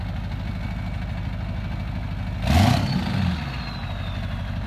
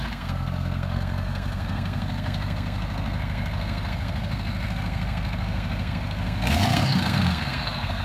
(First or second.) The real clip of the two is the first